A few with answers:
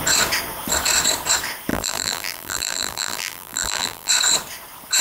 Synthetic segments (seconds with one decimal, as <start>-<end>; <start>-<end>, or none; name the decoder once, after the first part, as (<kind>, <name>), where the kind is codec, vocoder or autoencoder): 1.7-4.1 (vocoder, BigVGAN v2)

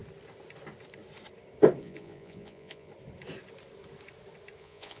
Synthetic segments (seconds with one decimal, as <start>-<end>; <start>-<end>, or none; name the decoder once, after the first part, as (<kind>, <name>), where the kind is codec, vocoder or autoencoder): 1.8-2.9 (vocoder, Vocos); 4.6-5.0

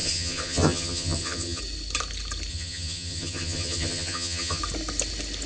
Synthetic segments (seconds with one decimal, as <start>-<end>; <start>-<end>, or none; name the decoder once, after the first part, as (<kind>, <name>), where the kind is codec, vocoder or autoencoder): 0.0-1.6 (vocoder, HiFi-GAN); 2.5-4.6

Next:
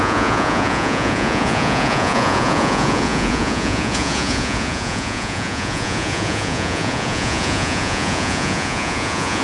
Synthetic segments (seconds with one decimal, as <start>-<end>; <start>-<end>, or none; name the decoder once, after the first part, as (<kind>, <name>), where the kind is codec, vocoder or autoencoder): 0.0-9.4 (vocoder, Vocos)

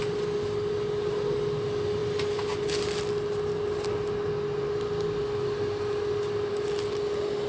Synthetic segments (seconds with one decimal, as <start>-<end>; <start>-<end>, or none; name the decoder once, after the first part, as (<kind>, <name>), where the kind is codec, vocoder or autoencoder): none